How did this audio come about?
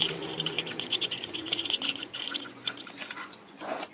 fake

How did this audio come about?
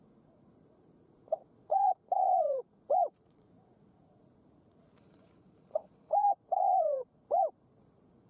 fake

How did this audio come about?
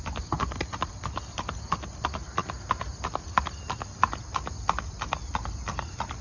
real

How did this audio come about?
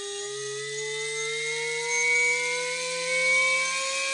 real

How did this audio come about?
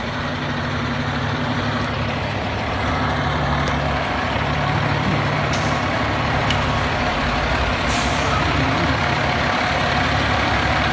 fake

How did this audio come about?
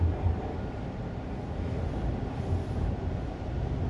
real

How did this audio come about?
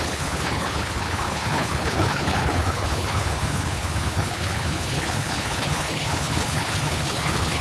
fake